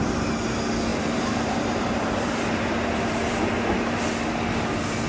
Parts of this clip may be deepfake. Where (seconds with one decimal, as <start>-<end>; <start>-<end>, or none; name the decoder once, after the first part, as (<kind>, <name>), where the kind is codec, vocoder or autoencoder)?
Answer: 0.9-4.0 (vocoder, BigVGAN v2)